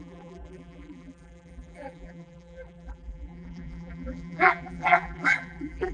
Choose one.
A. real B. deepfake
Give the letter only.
B